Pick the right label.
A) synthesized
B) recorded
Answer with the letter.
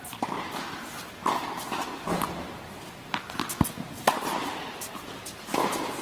A